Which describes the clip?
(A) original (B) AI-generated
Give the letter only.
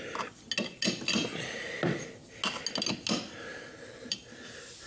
A